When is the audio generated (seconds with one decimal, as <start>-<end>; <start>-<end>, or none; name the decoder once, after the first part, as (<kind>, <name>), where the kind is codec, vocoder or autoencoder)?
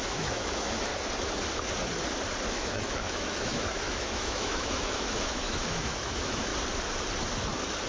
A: 0.0-0.9 (autoencoder, DAC-VAE); 2.5-6.5